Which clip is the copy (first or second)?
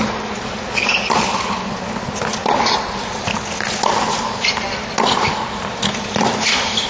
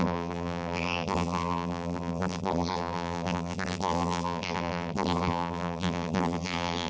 second